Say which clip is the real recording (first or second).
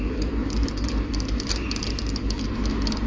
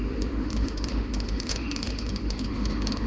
first